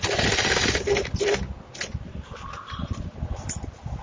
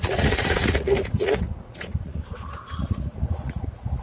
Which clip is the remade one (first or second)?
second